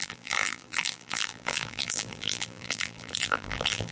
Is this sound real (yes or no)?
no